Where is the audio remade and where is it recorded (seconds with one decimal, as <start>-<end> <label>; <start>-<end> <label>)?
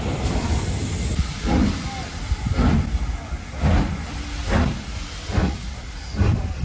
0.0-5.4 recorded; 5.4-5.9 remade; 5.9-6.6 recorded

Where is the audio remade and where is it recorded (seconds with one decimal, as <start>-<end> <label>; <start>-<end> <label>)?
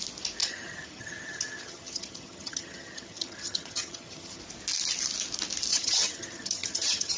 0.0-0.4 recorded; 0.4-4.4 remade; 4.4-5.7 recorded; 5.7-7.2 remade